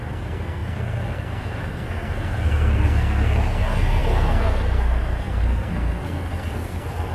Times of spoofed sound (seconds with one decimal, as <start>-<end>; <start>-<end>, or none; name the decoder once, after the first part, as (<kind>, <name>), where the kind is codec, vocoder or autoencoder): 0.0-7.1 (codec, SNAC)